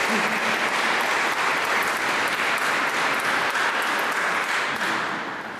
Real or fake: real